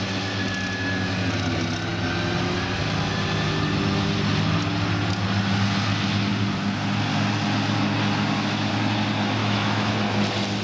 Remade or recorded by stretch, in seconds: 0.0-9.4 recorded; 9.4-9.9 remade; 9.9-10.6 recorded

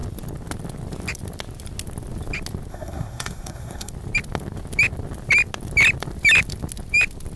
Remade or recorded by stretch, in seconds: 0.0-2.7 recorded; 2.7-3.9 remade; 3.9-7.4 recorded

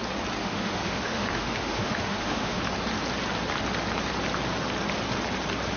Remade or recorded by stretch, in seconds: 0.0-0.4 recorded; 0.4-2.6 remade; 2.6-5.8 recorded

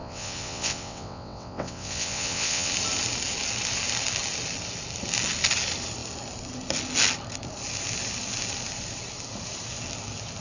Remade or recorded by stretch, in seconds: 0.0-2.7 remade; 2.7-10.4 recorded